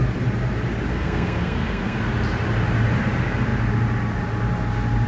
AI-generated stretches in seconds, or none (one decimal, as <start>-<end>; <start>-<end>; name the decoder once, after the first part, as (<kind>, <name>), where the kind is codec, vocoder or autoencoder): 0.9-2.0 (codec, SNAC)